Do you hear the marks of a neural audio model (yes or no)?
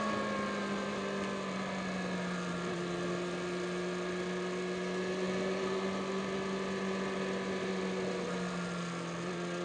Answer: no